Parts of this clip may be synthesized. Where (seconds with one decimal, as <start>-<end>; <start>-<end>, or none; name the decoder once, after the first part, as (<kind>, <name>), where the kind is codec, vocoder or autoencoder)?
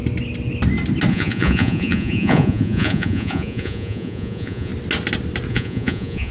1.1-4.7 (vocoder, Vocos); 5.5-6.3